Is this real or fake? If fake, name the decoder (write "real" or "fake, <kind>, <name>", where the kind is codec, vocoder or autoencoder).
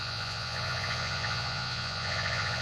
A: fake, vocoder, Vocos